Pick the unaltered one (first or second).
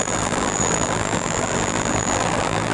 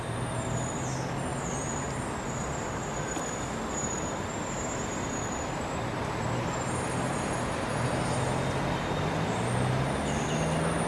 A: second